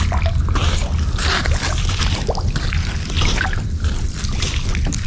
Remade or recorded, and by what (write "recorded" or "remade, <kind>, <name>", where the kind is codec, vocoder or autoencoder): recorded